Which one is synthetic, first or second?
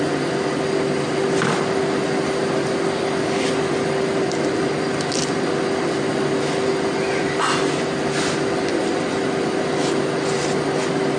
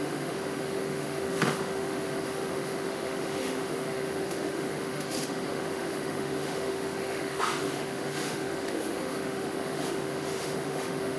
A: second